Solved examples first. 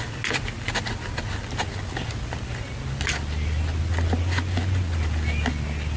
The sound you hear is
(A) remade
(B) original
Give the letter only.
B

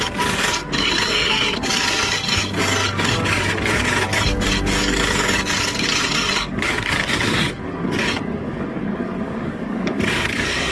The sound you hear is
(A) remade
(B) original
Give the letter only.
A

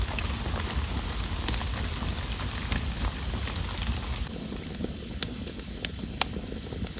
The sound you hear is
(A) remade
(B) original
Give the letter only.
B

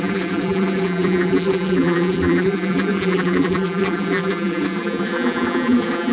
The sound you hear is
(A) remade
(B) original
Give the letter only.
A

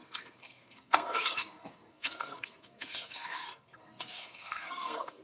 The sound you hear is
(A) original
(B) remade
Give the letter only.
B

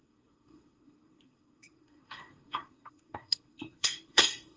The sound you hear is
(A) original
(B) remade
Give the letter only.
B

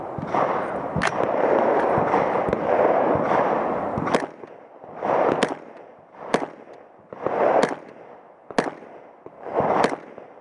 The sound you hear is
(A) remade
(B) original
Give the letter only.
B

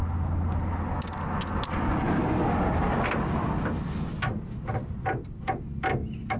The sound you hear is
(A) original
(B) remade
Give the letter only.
A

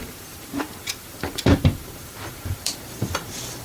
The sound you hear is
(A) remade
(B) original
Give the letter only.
A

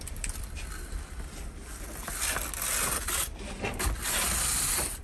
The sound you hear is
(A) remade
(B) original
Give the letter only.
B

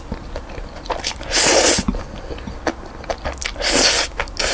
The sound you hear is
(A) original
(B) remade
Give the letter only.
A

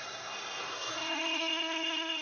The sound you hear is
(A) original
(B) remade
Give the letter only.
B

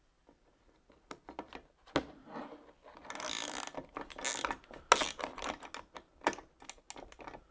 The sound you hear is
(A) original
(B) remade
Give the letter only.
A